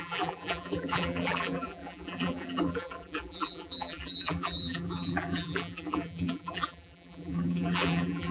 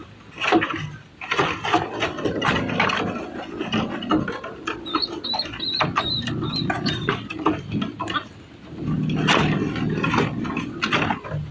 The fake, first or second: first